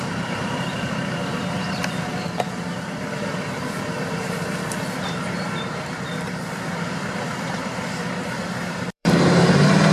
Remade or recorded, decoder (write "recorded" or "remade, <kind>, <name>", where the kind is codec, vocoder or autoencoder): remade, vocoder, BigVGAN v2